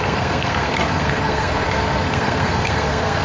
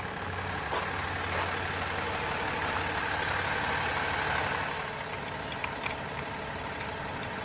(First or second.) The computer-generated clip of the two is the first